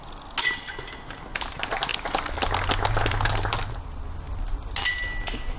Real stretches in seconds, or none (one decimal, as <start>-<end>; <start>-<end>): 0.0-5.6